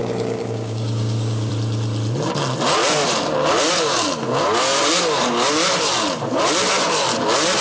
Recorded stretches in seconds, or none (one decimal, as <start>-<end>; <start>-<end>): 1.5-7.6